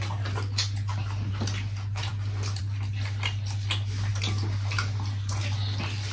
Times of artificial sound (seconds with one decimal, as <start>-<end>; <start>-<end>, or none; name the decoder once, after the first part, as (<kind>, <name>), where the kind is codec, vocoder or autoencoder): none